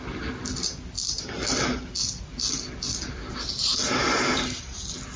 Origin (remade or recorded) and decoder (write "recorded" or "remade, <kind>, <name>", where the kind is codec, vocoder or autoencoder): recorded